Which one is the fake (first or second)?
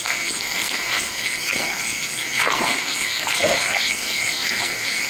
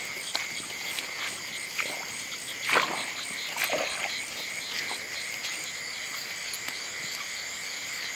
first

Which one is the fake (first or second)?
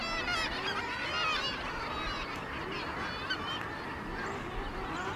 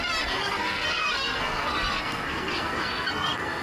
second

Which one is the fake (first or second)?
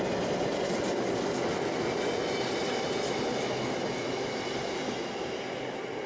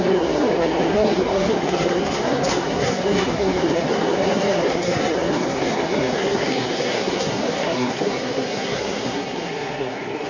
second